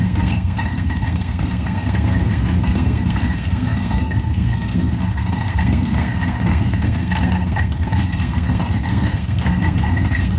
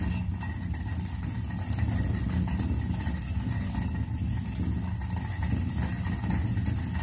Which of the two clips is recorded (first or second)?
second